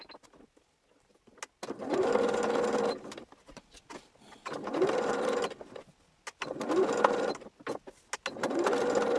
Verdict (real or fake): real